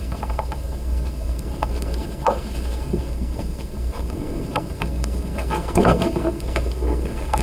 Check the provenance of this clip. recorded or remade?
remade